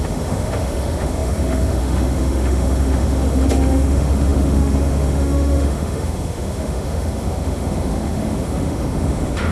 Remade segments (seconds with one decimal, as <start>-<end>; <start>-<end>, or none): 0.0-9.5